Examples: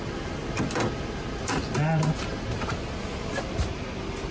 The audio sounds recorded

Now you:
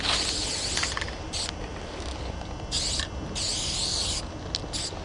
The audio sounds recorded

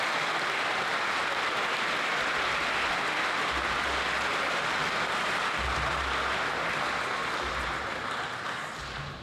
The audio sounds recorded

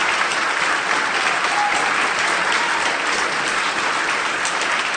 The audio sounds recorded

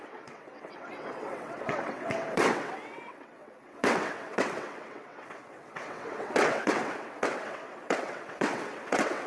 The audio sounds remade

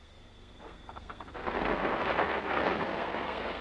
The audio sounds remade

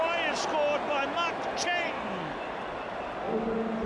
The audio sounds recorded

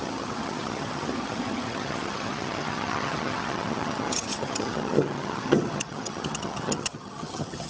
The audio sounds remade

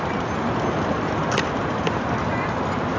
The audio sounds recorded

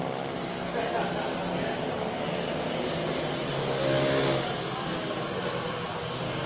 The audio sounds recorded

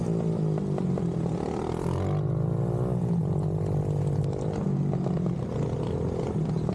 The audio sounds recorded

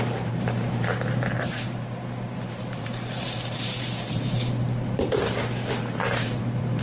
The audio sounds remade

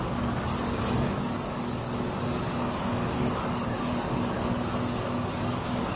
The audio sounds remade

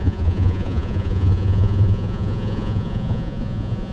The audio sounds remade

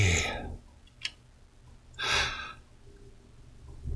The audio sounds recorded